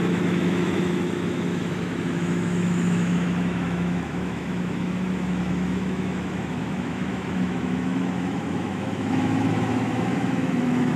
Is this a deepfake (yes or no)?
yes